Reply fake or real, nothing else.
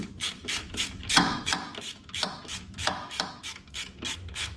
fake